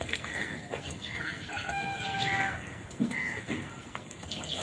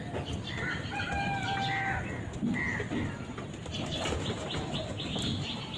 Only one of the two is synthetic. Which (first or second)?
first